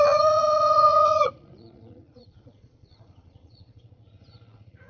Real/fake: fake